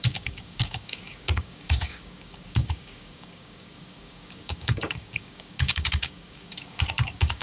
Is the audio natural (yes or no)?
no